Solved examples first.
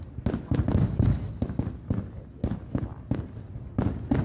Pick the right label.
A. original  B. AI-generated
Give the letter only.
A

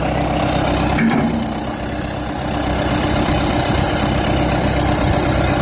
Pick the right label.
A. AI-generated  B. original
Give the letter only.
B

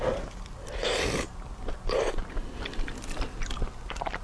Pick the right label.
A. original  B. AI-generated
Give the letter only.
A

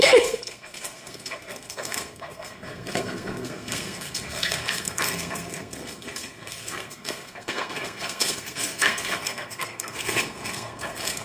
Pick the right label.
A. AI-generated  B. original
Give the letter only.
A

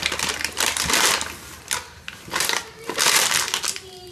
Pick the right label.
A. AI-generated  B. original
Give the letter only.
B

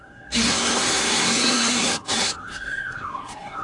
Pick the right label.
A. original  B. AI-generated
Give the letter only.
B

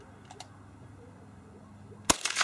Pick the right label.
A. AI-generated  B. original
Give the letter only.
B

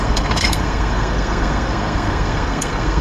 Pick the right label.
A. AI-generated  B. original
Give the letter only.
A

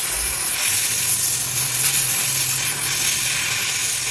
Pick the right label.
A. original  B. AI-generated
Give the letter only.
A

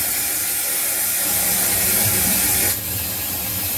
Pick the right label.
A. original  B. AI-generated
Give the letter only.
A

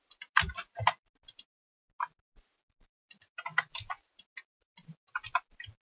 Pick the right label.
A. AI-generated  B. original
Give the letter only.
B